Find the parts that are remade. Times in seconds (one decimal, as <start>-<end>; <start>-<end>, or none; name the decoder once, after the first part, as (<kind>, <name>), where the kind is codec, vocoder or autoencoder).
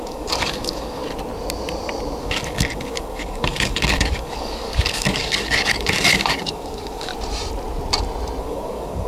0.0-1.0 (codec, DAC); 2.2-7.1; 8.4-9.1